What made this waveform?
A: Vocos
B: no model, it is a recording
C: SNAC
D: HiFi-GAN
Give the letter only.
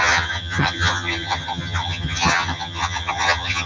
D